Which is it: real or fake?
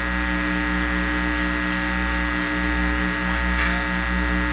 real